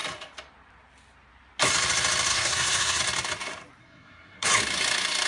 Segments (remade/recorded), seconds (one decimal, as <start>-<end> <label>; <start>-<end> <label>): 0.0-2.3 recorded; 2.3-3.0 remade; 3.0-3.8 recorded; 3.8-4.5 remade; 4.5-5.3 recorded